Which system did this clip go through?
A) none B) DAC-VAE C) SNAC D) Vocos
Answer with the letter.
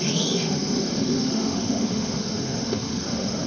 B